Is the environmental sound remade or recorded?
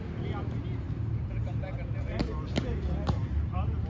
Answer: recorded